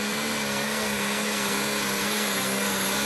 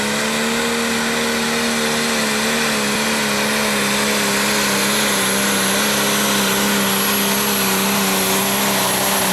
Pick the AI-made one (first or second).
first